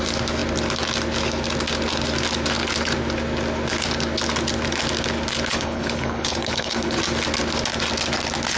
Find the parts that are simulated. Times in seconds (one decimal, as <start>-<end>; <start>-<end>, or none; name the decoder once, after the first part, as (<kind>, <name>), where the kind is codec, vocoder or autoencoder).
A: 5.5-7.0 (codec, HILCodec)